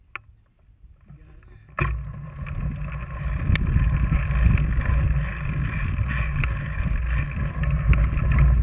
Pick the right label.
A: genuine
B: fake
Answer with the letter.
A